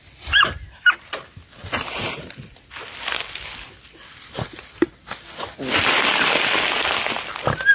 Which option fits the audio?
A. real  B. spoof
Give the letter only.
A